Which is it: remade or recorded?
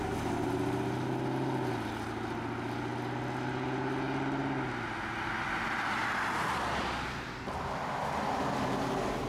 recorded